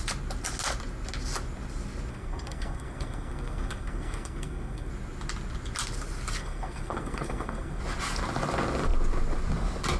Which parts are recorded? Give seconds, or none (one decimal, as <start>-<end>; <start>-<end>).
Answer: 0.0-2.1; 4.9-6.4; 7.8-10.0